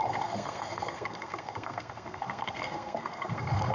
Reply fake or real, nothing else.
fake